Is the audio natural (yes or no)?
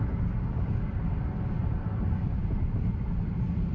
yes